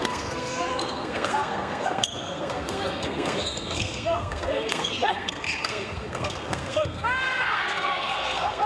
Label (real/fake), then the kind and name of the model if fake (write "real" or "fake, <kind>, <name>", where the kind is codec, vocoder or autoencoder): fake, codec, SNAC